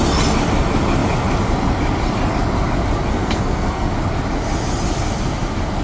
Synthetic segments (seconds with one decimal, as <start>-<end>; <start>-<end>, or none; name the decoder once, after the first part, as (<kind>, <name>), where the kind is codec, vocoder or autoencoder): 3.1-3.9 (codec, SNAC)